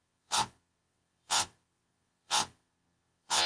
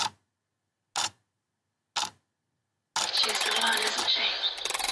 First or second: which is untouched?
second